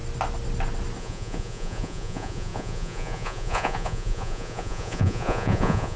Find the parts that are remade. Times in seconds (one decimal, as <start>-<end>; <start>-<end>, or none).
1.0-6.0